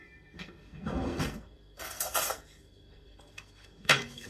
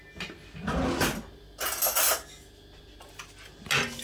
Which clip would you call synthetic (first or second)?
first